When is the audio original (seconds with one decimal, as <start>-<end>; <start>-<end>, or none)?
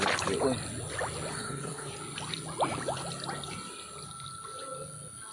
0.0-1.3; 1.9-5.3